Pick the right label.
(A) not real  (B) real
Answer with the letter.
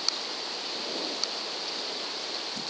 B